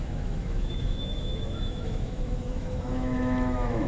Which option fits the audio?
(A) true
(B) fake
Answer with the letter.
B